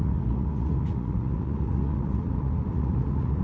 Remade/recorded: remade